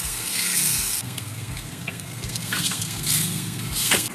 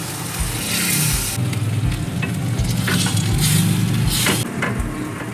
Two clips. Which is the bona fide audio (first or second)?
second